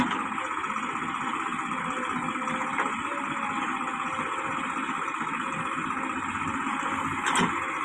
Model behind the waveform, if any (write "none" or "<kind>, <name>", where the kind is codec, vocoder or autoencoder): none